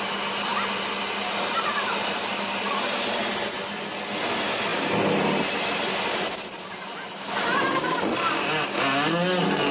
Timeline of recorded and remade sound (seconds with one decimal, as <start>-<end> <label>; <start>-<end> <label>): 0.0-9.7 recorded